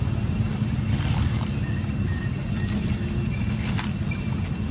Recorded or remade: recorded